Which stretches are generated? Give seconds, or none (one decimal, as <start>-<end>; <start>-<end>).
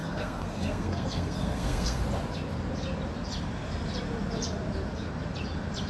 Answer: 0.0-2.0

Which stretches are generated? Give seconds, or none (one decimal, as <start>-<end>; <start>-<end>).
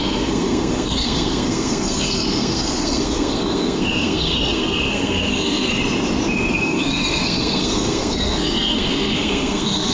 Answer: 0.0-5.8; 6.5-9.9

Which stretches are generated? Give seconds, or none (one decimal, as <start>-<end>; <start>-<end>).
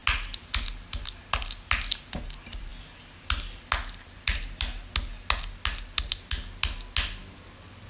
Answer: none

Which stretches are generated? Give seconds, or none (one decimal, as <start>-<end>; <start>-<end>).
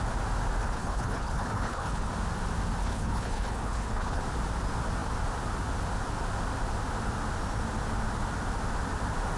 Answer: 0.6-2.1; 2.8-4.2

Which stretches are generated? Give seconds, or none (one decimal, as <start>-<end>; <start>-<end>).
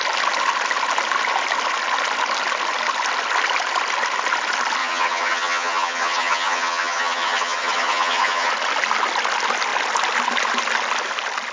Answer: 4.8-8.5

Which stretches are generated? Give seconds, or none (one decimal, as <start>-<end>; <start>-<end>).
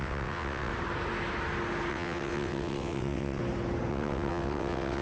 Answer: 0.0-0.7; 1.9-3.4; 3.9-5.0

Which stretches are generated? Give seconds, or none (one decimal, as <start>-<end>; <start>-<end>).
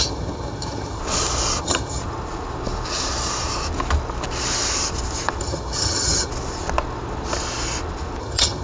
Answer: 0.0-1.0; 1.6-2.0; 5.4-6.3; 8.2-8.6